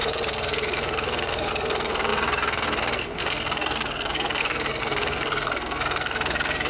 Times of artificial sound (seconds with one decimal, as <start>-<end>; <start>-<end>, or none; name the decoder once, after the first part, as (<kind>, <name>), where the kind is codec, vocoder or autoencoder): 0.0-6.7 (codec, SNAC)